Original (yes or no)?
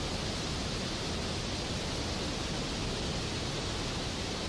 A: yes